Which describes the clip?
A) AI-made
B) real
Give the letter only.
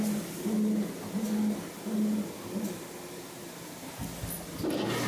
B